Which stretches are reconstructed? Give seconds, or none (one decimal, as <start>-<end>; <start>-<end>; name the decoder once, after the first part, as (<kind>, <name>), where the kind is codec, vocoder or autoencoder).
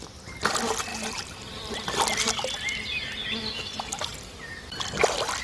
none